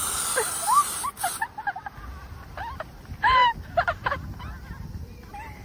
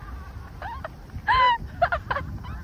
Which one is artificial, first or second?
first